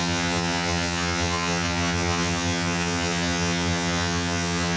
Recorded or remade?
remade